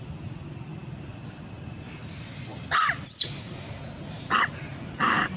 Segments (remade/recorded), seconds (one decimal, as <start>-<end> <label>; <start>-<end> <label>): 0.0-0.7 recorded; 0.7-2.2 remade; 2.2-5.4 recorded